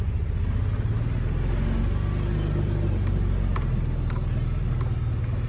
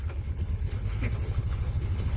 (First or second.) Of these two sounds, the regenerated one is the second